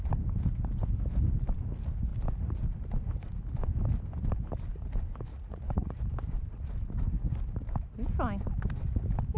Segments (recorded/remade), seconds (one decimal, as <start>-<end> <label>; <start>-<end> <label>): 0.0-5.3 recorded; 5.3-6.0 remade; 6.0-9.4 recorded